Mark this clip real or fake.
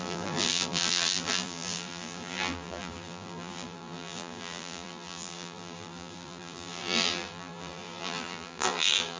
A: fake